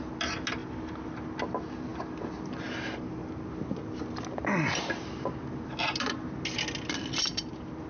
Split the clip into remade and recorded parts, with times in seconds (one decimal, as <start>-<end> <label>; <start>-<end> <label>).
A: 0.0-7.9 recorded